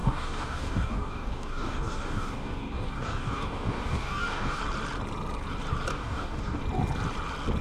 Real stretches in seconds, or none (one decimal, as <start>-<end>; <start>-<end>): 4.6-5.9; 6.6-7.6